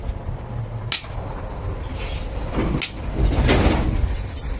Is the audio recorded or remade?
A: recorded